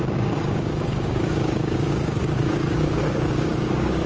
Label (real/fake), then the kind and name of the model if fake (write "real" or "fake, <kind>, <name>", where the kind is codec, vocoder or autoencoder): fake, codec, DAC